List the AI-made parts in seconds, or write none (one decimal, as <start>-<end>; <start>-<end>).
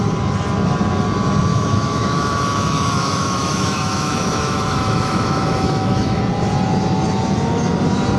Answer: 1.5-6.2